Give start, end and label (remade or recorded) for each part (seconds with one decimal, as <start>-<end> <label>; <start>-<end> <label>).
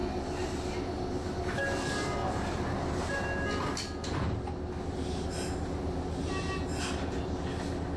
0.0-8.0 recorded